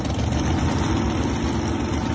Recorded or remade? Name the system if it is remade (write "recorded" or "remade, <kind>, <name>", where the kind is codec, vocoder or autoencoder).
recorded